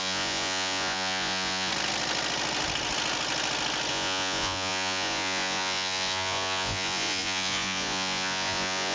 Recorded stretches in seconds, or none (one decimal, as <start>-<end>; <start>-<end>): 1.7-3.9